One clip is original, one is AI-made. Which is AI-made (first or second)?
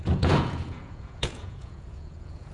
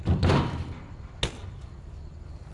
first